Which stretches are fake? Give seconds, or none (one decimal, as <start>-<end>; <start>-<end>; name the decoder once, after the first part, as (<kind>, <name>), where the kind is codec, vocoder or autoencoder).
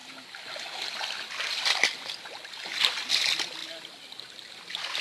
0.0-2.2 (vocoder, BigVGAN v2); 3.6-5.0